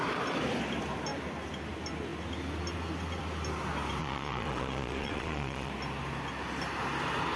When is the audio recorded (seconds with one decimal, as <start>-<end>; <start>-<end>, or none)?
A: 0.0-4.0; 5.7-7.4